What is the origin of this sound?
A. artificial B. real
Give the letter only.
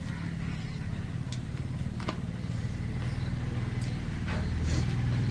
B